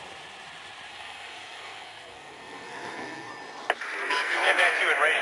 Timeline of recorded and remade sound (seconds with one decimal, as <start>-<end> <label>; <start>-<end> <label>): 0.0-0.9 recorded; 0.9-3.3 remade; 3.3-4.0 recorded; 4.0-4.8 remade; 4.8-5.2 recorded